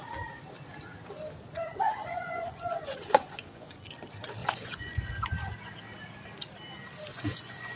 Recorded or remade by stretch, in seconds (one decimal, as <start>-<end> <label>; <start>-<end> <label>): 0.0-1.7 recorded; 1.7-3.8 remade; 3.8-4.4 recorded; 4.4-5.1 remade; 5.1-7.1 recorded; 7.1-7.8 remade